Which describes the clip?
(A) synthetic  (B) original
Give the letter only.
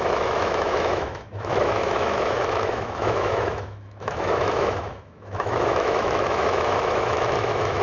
A